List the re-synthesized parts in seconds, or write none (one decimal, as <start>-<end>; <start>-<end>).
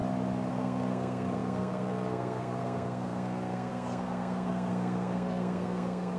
0.5-6.2